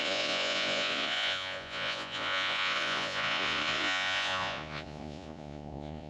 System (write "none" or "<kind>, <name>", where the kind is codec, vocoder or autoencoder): vocoder, Vocos